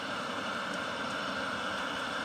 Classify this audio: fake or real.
fake